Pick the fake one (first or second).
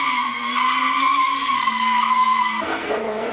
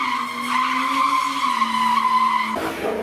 first